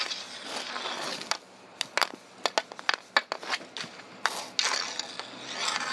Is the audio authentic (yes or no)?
yes